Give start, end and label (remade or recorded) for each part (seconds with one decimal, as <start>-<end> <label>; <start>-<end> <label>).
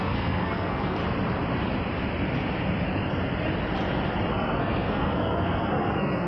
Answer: 0.0-1.0 remade; 1.0-4.3 recorded; 4.3-6.3 remade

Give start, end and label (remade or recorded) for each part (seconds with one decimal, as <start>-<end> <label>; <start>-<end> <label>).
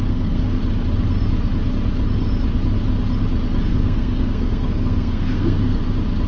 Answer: 0.0-0.6 remade; 0.6-3.7 recorded; 3.7-5.8 remade; 5.8-6.3 recorded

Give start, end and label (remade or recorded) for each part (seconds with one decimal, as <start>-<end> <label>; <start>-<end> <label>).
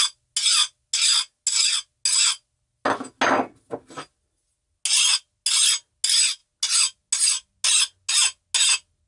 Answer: 0.0-9.1 recorded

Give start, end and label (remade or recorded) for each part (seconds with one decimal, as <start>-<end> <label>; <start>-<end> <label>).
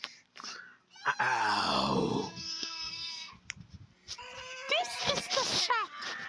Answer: 0.0-2.3 recorded; 2.3-3.3 remade; 3.3-6.3 recorded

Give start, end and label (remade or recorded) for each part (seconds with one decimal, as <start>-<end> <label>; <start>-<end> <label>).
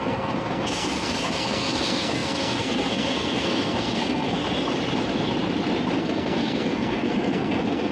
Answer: 0.0-4.4 remade; 4.4-6.0 recorded; 6.0-7.9 remade